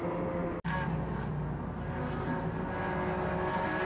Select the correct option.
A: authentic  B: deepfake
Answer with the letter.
A